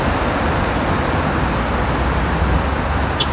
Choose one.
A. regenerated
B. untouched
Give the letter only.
B